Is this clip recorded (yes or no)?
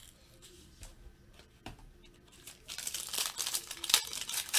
no